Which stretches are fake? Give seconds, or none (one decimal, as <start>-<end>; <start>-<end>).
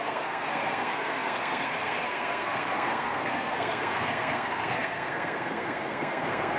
0.0-6.6